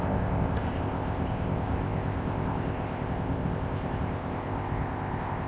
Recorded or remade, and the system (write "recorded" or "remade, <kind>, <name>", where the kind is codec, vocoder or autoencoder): remade, codec, ZipCodec